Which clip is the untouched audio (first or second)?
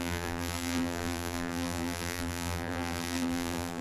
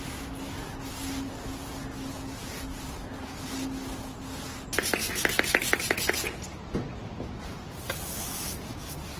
second